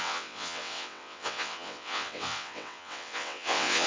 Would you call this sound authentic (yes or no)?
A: no